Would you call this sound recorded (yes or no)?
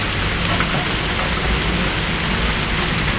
yes